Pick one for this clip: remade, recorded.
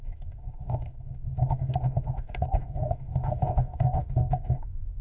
remade